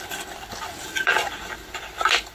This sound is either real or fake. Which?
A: real